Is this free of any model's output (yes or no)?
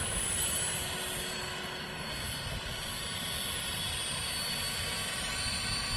yes